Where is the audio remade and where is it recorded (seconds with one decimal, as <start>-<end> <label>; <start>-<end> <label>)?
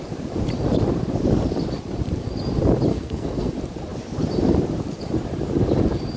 0.0-2.9 recorded; 2.9-3.5 remade; 3.5-6.2 recorded